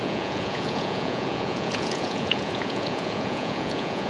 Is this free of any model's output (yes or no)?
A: no